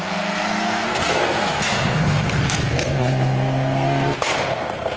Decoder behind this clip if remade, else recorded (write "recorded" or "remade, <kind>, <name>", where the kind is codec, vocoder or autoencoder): remade, codec, SNAC